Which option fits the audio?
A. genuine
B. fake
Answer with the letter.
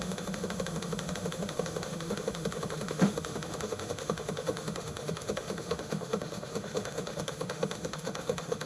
B